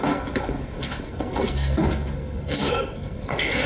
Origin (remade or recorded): remade